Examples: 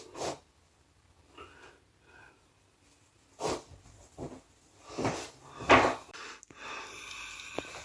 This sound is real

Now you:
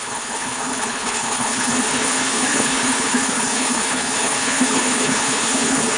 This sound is fake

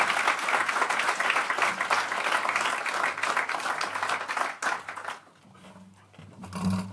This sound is real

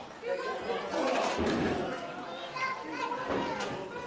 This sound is real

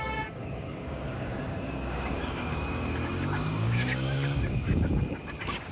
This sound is fake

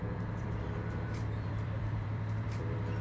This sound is fake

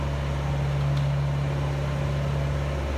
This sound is real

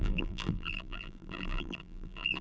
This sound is fake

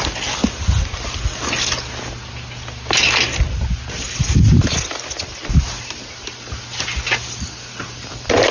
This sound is real